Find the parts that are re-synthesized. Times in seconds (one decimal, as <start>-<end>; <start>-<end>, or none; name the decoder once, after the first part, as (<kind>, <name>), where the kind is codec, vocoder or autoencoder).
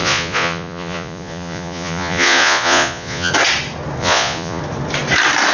0.0-3.3 (vocoder, Vocos); 4.0-4.6